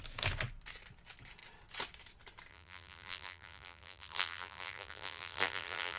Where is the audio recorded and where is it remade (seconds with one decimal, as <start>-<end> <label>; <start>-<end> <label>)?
0.0-2.5 recorded; 2.5-6.0 remade